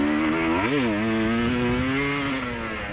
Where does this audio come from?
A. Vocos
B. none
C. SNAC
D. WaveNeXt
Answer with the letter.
B